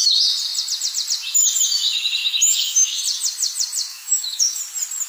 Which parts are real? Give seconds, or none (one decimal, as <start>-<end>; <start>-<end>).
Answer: 0.0-2.2; 3.0-3.9; 4.6-5.1